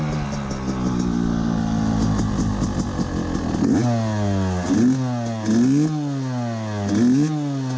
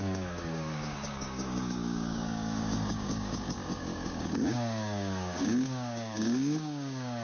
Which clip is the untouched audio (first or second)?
first